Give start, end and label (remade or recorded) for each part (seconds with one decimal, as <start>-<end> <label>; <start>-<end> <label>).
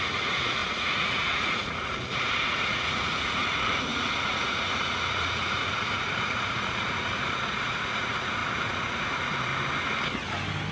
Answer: 0.0-9.5 remade; 9.5-10.7 recorded